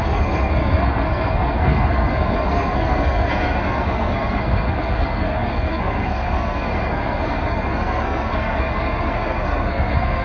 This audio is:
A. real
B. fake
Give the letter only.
B